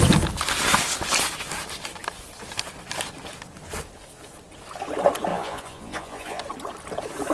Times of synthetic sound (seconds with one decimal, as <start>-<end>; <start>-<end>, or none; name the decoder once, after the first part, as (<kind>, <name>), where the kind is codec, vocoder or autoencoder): 5.3-6.4 (vocoder, Vocos)